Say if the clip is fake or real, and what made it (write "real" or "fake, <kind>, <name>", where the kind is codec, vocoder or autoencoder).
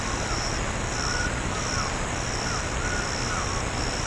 real